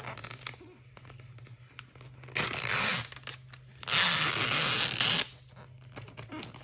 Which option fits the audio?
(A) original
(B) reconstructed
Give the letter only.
A